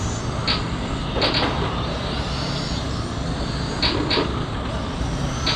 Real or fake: real